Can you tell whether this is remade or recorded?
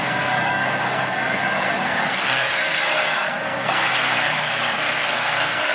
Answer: remade